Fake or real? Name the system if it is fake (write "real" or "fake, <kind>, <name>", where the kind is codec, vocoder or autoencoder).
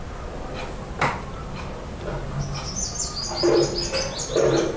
real